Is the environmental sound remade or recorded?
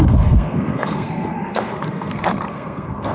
remade